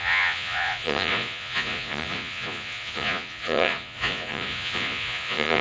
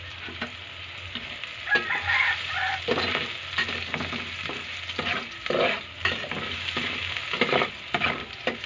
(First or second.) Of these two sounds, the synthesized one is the first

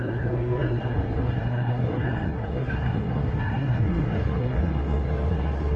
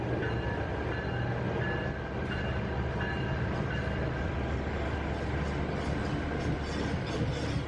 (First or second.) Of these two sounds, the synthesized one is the first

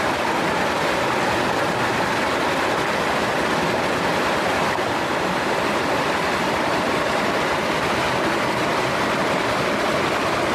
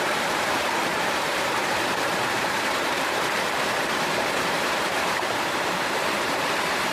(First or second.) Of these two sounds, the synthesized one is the second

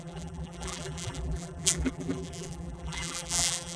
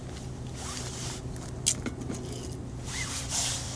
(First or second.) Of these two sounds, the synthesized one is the first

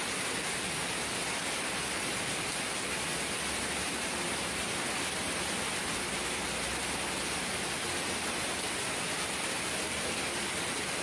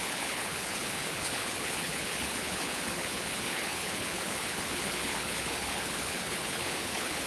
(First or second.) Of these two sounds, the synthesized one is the second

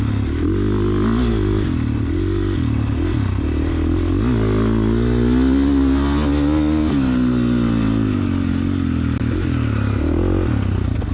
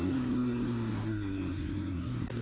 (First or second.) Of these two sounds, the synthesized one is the second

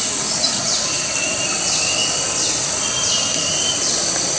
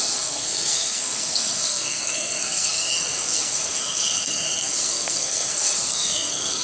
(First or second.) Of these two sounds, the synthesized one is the second